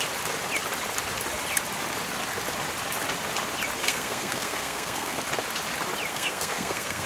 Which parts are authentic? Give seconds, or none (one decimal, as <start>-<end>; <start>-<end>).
0.0-3.8; 5.2-6.1